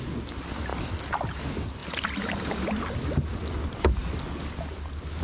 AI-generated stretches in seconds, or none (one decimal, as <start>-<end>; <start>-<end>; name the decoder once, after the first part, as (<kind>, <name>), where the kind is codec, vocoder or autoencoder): 1.8-3.0 (vocoder, BigVGAN v2)